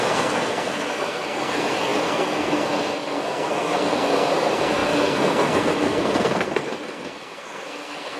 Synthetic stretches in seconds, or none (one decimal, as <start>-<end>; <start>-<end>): 0.0-8.2